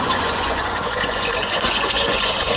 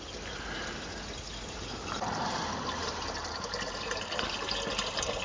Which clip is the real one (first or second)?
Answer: second